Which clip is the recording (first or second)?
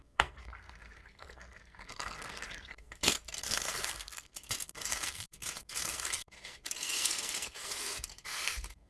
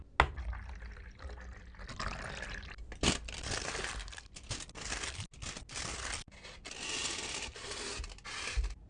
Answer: second